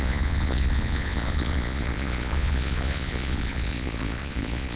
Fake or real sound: fake